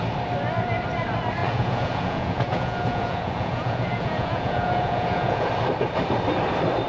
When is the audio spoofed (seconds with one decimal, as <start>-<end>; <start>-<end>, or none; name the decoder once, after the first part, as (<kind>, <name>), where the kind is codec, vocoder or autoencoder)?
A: 1.4-5.5 (vocoder, Vocos)